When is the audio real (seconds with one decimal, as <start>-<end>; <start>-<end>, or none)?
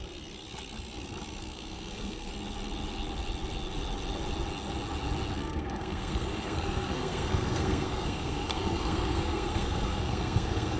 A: 0.0-1.4; 2.3-5.4